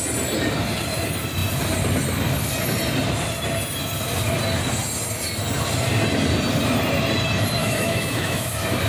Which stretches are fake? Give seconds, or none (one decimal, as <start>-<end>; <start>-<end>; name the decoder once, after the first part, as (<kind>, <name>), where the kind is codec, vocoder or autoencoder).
7.6-8.5 (autoencoder, DAC-VAE)